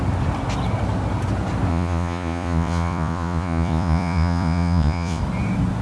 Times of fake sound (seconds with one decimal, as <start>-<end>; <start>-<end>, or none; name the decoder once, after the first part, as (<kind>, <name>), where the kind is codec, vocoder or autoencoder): 1.7-5.2 (vocoder, Vocos)